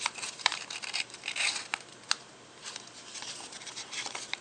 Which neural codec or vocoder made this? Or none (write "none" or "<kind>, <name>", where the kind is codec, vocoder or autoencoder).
vocoder, BigVGAN v2